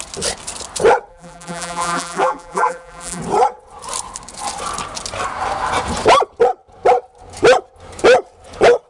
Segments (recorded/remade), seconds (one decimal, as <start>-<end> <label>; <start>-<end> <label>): 0.0-1.1 recorded; 1.1-3.2 remade; 3.2-8.9 recorded